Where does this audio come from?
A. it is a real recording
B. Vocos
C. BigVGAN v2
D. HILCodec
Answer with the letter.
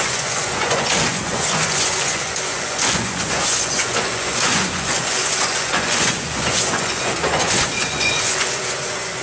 B